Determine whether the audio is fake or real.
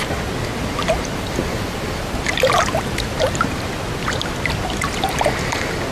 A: real